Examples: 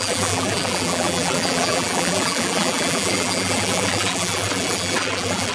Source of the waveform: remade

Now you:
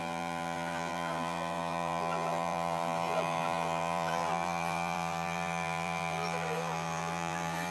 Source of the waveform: remade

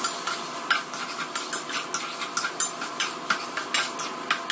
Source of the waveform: recorded